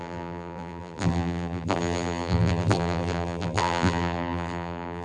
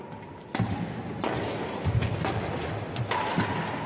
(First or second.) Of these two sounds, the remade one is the first